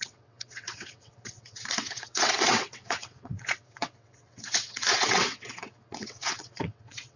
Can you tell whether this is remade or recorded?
remade